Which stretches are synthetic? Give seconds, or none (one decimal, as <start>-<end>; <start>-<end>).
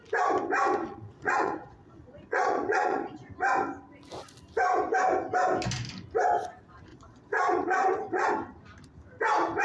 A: 0.8-3.3; 6.9-8.3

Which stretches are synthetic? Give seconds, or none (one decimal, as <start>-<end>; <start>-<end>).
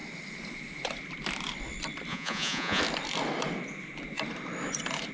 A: 2.1-2.8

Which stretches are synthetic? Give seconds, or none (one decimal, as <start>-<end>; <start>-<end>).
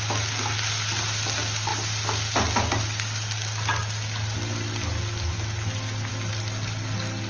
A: none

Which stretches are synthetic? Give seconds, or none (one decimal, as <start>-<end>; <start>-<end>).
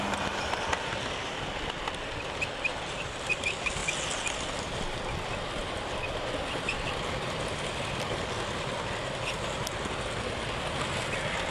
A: none